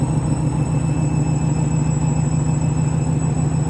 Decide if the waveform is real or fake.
real